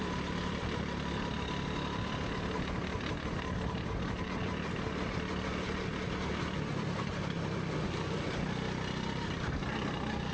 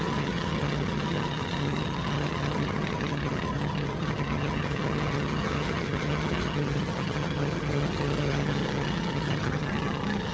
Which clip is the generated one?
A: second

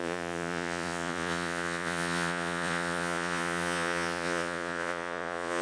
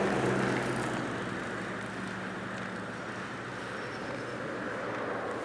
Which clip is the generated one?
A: first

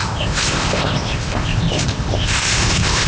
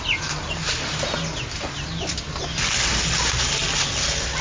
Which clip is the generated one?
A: first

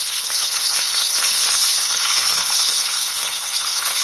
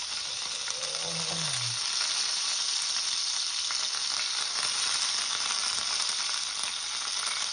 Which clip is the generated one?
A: first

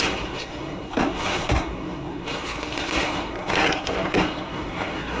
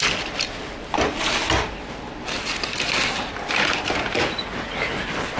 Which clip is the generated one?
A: first